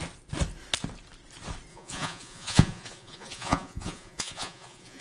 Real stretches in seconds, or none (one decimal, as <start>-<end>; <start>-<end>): 0.0-1.7